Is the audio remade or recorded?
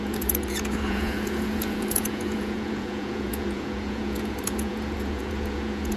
remade